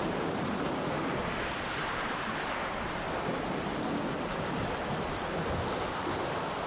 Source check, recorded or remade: recorded